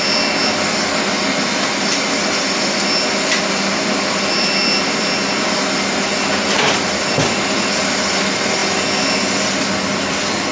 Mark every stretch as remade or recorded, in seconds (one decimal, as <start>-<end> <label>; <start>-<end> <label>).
0.0-10.5 recorded